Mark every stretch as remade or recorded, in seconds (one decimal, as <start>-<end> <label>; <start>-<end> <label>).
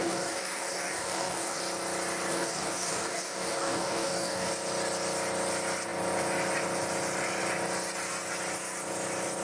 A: 0.0-1.6 remade; 1.6-2.3 recorded; 2.3-4.5 remade; 4.5-9.4 recorded